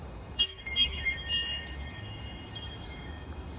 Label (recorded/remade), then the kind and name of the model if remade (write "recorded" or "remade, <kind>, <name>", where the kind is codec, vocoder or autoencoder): remade, autoencoder, DAC-VAE